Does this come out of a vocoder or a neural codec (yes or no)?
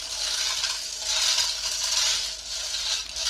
no